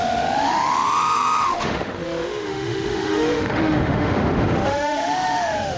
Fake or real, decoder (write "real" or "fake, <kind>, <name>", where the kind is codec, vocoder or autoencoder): fake, autoencoder, DAC-VAE